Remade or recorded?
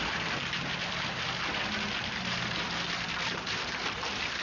recorded